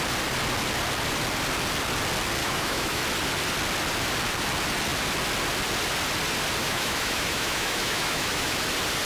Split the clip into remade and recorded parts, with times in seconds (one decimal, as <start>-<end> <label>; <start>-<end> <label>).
0.0-2.4 recorded; 2.4-3.0 remade; 3.0-6.6 recorded; 6.6-8.6 remade; 8.6-9.1 recorded